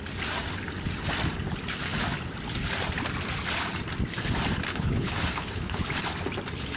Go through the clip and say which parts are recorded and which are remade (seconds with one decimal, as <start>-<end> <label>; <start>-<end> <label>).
0.0-4.7 recorded; 4.7-5.9 remade; 5.9-6.8 recorded